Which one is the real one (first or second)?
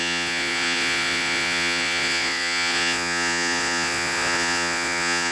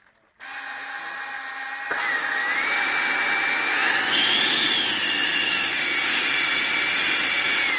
second